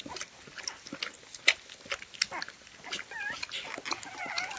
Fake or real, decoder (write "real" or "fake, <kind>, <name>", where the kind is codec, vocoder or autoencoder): real